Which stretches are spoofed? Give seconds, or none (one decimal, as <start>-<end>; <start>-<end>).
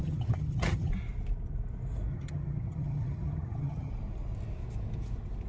0.0-0.9; 2.1-3.9